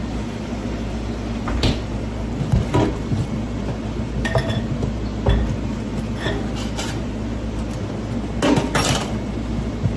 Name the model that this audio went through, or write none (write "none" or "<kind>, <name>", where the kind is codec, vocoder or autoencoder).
none